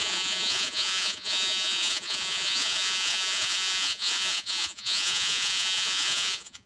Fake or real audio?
fake